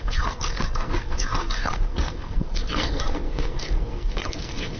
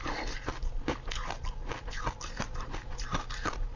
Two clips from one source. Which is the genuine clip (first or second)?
second